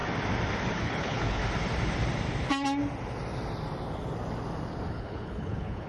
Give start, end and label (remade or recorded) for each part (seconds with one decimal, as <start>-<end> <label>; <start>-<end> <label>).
0.0-0.7 recorded; 0.7-1.4 remade; 1.4-4.9 recorded; 4.9-5.9 remade